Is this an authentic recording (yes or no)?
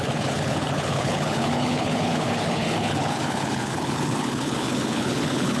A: no